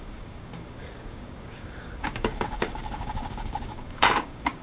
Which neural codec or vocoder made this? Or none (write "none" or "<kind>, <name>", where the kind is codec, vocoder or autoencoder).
codec, DAC